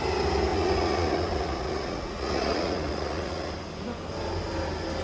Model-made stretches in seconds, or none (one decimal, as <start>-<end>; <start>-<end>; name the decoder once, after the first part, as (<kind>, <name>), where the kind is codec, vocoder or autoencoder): 0.5-3.5 (vocoder, Vocos)

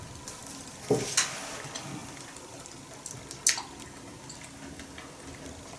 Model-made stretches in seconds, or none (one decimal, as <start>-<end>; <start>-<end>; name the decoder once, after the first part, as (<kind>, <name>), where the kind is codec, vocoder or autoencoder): 0.4-1.1 (vocoder, BigVGAN v2); 2.0-2.8

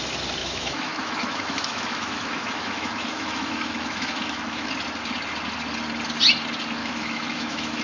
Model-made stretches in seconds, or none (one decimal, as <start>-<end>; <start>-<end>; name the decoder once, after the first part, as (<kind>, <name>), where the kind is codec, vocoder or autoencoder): 0.4-4.7 (autoencoder, DAC-VAE); 6.8-7.8

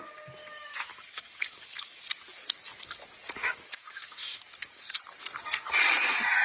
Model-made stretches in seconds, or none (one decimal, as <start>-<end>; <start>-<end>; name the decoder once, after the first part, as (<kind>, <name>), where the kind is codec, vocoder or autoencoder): 0.4-2.0 (autoencoder, DAC-VAE); 3.4-4.4

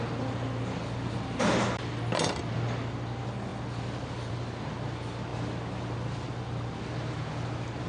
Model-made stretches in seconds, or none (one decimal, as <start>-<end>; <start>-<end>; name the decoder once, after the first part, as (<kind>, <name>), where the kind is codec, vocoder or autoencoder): none

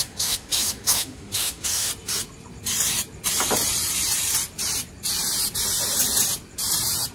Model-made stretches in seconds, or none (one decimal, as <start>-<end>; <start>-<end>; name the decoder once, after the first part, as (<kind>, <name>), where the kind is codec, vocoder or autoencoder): 0.0-1.9 (autoencoder, DAC-VAE)

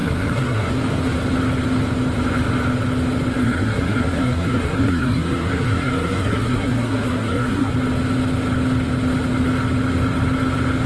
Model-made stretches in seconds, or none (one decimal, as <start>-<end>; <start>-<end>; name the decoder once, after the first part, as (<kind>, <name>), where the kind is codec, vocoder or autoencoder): 0.0-0.7 (codec, SNAC); 3.4-7.7